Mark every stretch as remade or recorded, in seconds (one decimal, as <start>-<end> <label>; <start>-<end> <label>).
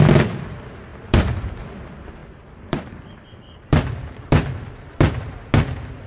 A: 0.0-0.9 recorded; 0.9-1.6 remade; 1.6-2.2 recorded; 2.2-5.2 remade; 5.2-6.1 recorded